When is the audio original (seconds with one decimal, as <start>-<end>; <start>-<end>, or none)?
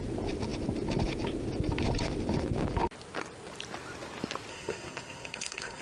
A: 0.0-4.5